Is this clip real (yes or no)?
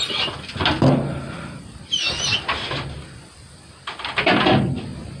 yes